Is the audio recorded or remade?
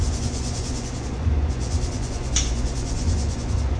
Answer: remade